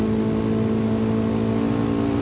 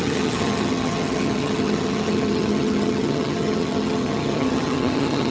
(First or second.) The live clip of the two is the first